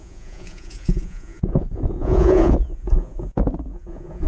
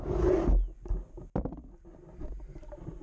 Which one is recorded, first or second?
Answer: second